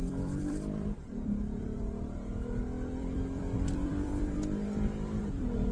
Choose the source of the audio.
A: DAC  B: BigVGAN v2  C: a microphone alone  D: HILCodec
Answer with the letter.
B